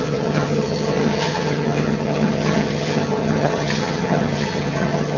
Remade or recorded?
remade